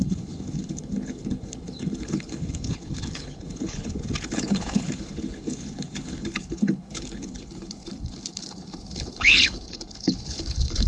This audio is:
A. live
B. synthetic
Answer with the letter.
B